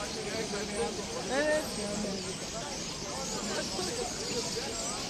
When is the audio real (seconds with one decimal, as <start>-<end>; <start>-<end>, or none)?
0.0-5.1